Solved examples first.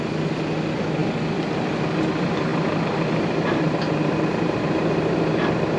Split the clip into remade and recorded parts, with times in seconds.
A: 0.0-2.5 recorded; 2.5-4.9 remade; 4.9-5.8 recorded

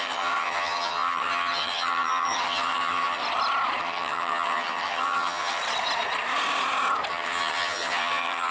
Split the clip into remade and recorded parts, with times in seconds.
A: 0.0-3.2 remade; 3.2-3.8 recorded; 3.8-5.6 remade; 5.6-7.1 recorded; 7.1-8.5 remade

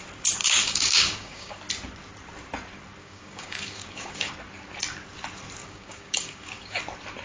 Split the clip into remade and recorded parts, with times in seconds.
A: 0.0-0.4 recorded; 0.4-1.6 remade; 1.6-3.0 recorded; 3.0-4.3 remade; 4.3-5.6 recorded; 5.6-6.8 remade; 6.8-7.2 recorded

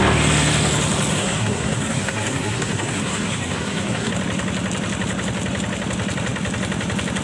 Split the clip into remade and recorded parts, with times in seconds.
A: 0.0-1.1 recorded; 1.1-4.1 remade; 4.1-7.2 recorded